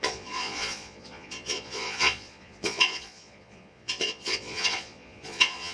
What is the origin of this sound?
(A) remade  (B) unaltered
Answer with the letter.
A